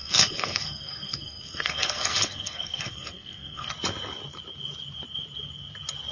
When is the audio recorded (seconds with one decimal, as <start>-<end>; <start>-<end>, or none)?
3.7-6.1